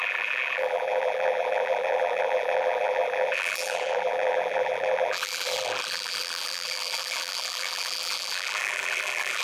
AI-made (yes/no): yes